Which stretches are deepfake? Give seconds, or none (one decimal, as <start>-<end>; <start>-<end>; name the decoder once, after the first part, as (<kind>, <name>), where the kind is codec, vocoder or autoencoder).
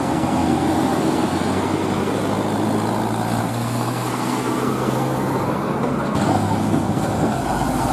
0.0-2.2 (codec, SNAC); 3.4-7.9